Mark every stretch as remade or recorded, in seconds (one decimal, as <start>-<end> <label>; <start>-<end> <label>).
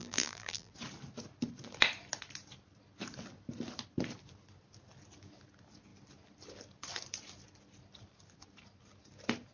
0.0-0.7 remade; 0.7-9.5 recorded